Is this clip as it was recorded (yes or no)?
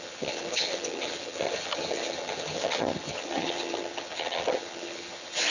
no